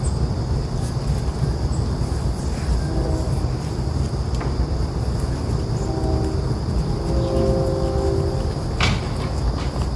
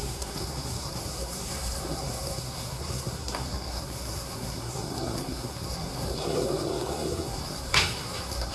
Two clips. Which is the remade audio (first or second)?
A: second